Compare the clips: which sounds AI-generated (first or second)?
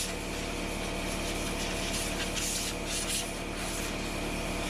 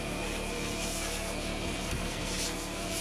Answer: second